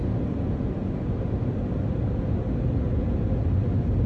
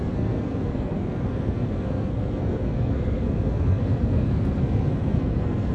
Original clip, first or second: first